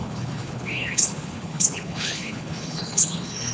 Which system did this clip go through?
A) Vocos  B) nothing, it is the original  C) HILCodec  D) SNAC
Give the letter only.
C